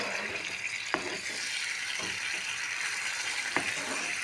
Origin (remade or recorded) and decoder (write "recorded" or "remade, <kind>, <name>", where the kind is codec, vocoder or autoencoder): recorded